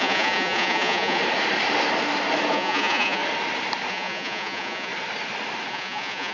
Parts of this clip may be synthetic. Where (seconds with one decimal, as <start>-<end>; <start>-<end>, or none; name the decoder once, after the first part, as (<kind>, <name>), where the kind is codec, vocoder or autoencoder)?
0.0-1.2 (vocoder, Vocos); 2.5-3.2; 3.9-4.9; 5.7-6.3